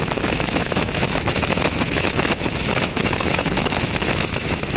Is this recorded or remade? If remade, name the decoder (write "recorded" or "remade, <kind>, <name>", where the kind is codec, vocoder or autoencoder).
remade, autoencoder, DAC-VAE